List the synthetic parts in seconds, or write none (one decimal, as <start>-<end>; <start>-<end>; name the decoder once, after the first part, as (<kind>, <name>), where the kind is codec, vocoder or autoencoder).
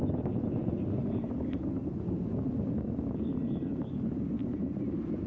4.4-5.3 (vocoder, BigVGAN v2)